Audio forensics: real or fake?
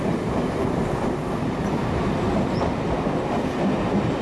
real